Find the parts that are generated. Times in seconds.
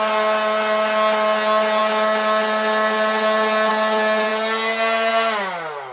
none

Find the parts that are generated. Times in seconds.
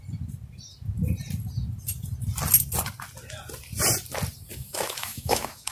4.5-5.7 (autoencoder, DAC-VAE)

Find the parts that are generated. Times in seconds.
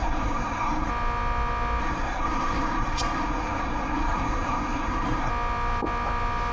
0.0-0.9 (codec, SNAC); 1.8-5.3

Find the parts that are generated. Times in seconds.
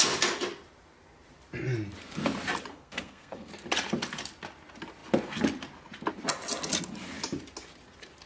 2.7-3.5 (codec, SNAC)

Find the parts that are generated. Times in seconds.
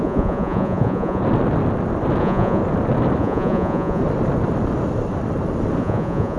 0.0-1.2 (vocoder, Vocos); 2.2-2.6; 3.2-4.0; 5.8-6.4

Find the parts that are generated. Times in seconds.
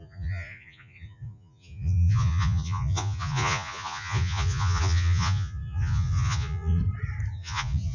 0.0-6.8 (vocoder, Vocos); 7.3-7.9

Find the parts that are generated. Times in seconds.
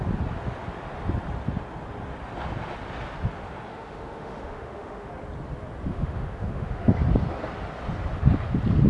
3.7-5.1 (autoencoder, DAC-VAE); 5.9-6.9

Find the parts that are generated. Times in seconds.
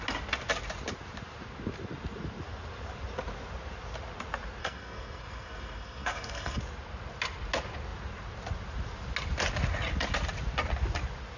4.6-6.6 (codec, SNAC)